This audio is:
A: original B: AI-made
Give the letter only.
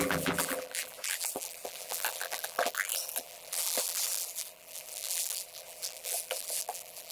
B